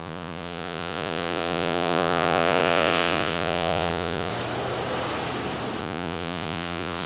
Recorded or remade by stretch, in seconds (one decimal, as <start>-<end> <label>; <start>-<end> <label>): 0.0-4.3 remade; 4.3-5.8 recorded; 5.8-7.1 remade